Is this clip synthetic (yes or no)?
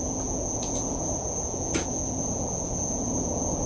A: yes